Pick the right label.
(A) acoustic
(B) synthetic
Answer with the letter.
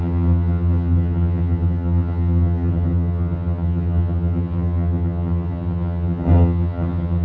B